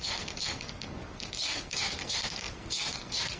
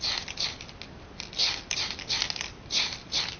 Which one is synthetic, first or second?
first